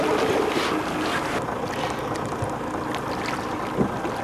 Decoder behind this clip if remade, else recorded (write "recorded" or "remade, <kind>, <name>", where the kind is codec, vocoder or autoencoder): recorded